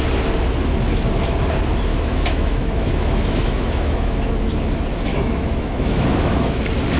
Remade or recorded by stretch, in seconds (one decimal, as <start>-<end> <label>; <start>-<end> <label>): 0.0-1.9 recorded; 1.9-4.3 remade; 4.3-5.1 recorded; 5.1-6.6 remade; 6.6-7.0 recorded